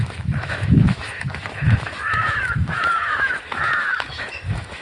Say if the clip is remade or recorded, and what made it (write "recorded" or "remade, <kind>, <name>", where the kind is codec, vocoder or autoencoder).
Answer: remade, autoencoder, DAC-VAE